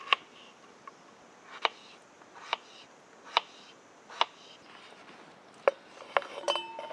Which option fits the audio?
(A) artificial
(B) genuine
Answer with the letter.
B